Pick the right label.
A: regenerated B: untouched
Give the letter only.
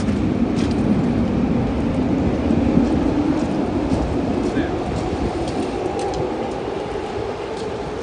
B